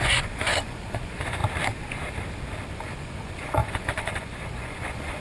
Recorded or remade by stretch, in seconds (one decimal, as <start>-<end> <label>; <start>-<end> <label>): 0.0-1.4 remade; 1.4-2.7 recorded; 2.7-5.2 remade